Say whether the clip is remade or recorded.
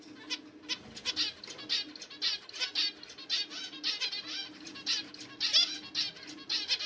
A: recorded